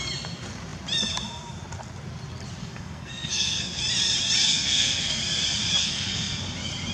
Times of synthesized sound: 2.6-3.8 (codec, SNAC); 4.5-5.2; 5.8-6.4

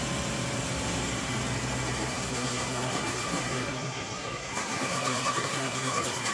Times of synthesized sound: 2.1-6.3 (codec, SNAC)

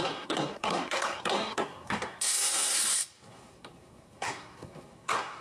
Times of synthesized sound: 0.0-5.4 (codec, SNAC)

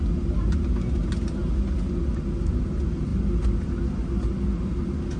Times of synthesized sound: none

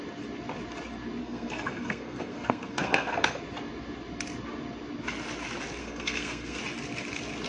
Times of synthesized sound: 1.2-3.4 (codec, SNAC); 5.8-6.6

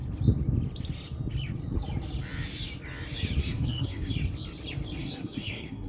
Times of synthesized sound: 3.4-4.1 (codec, SNAC); 5.0-5.9

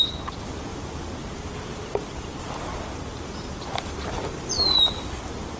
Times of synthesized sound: none